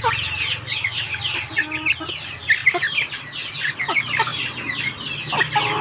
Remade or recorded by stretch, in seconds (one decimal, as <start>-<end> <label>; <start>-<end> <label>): 0.0-0.8 recorded; 0.8-1.5 remade; 1.5-2.6 recorded; 2.6-3.5 remade; 3.5-5.8 recorded